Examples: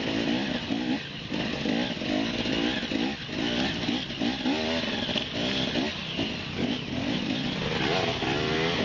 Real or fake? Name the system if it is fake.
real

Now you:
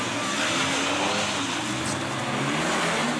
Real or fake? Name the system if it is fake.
real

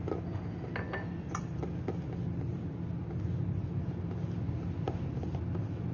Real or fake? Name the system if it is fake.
real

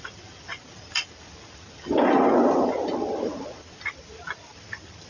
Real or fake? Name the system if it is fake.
real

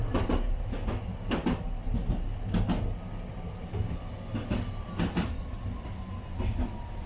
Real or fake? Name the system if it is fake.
real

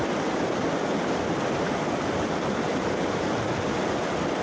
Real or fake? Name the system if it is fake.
real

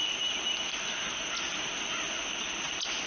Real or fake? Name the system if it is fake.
real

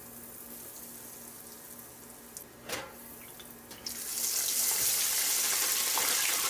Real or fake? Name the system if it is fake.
real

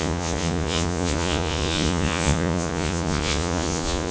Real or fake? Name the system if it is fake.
fake, vocoder, Vocos